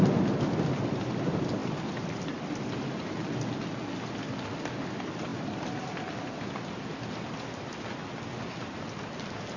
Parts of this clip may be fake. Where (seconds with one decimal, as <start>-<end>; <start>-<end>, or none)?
1.6-2.1; 5.3-5.9